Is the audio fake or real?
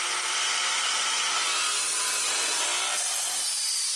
real